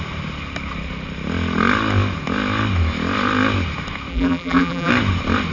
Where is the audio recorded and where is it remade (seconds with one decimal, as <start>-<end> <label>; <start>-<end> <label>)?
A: 0.0-4.1 recorded; 4.1-4.9 remade; 4.9-5.5 recorded